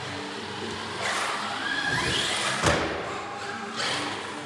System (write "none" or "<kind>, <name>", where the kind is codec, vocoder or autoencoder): none